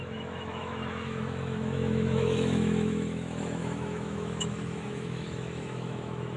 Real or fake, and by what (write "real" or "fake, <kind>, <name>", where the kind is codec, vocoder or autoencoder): fake, autoencoder, DAC-VAE